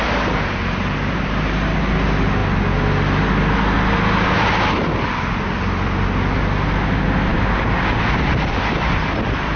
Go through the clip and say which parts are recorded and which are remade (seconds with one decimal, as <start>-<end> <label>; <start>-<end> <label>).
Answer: 0.0-9.6 recorded